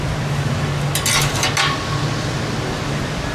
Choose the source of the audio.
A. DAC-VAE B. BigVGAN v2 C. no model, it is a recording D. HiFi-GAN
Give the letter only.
C